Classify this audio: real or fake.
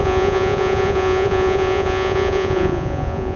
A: fake